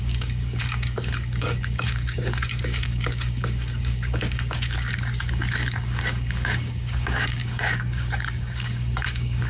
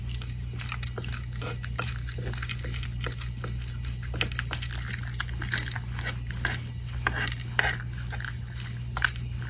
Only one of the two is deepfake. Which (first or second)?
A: first